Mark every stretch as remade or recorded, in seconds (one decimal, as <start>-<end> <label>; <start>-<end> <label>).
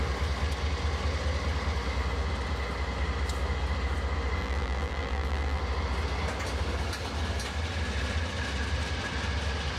0.0-4.4 recorded; 4.4-5.6 remade; 5.6-9.8 recorded